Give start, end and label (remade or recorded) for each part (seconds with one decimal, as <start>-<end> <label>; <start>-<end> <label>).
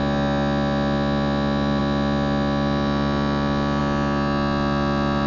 0.0-5.3 recorded